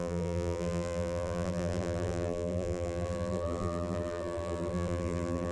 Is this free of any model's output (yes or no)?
no